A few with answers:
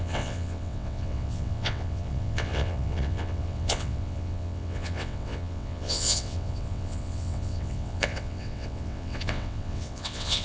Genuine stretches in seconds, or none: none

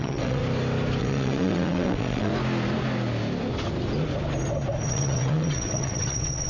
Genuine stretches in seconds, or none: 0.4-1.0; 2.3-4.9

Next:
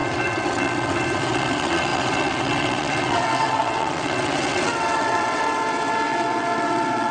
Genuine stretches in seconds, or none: none

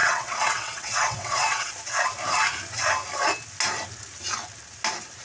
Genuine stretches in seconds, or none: 1.7-5.2

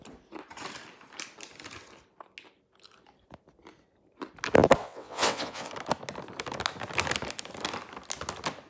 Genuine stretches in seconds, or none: 0.0-4.8; 5.7-8.7

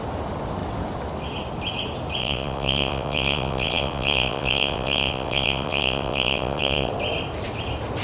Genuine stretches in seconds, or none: 0.0-2.2; 6.9-8.0

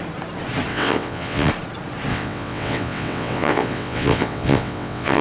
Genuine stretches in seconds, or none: 0.0-0.7; 1.5-2.1